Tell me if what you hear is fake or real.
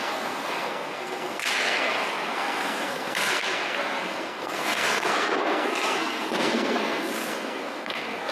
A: fake